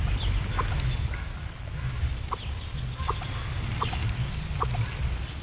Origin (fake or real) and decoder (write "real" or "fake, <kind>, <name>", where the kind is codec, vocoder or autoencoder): real